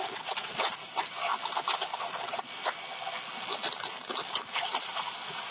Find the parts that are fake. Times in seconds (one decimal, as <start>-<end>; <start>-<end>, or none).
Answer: 0.0-1.3; 4.6-5.5